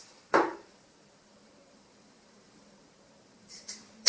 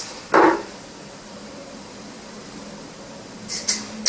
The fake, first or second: first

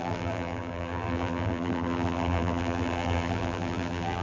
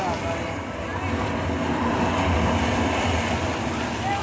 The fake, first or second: first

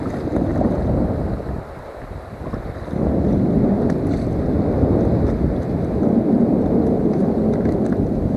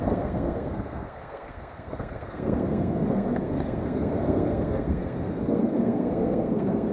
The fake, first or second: second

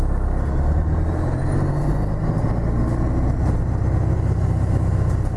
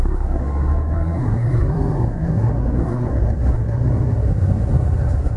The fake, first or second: second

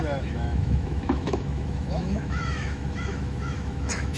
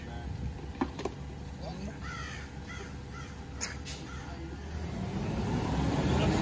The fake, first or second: first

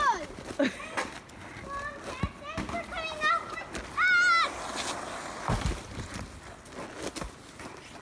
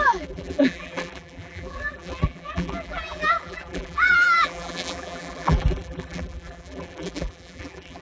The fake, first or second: second